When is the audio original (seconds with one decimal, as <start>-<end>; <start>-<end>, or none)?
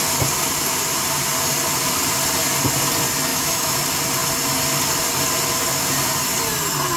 0.0-3.3; 3.8-7.0